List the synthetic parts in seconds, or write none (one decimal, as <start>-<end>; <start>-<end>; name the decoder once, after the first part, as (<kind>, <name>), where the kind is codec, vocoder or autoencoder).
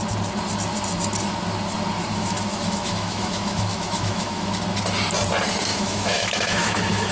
2.1-4.5 (autoencoder, DAC-VAE); 5.7-7.1